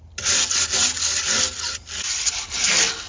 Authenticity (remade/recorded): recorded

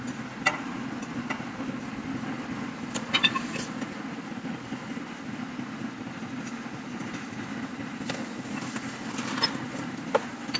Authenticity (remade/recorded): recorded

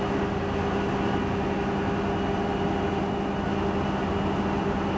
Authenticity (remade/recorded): recorded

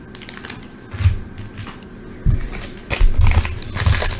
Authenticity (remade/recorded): recorded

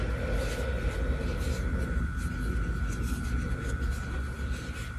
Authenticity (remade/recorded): recorded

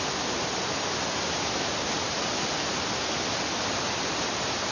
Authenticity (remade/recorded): recorded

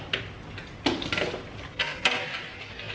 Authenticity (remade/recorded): recorded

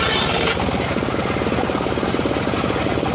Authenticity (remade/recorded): recorded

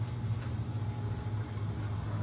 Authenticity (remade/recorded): recorded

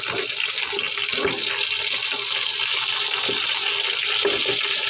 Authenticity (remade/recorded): recorded